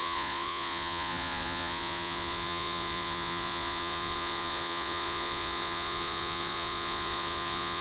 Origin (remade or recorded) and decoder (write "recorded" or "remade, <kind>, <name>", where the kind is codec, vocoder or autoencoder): remade, vocoder, Vocos